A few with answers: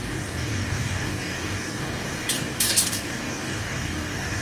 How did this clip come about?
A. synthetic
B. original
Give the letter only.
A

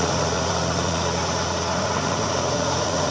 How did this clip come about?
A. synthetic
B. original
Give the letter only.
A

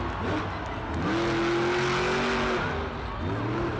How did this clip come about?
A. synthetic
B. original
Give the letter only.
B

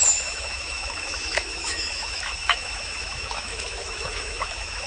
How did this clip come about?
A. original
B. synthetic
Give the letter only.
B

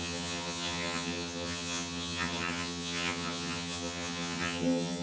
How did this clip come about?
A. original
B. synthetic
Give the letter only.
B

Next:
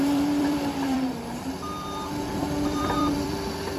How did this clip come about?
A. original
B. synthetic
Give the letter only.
B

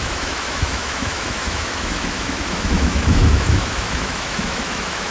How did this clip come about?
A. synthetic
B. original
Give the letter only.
A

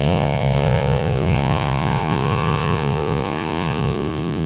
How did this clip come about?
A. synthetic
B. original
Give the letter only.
A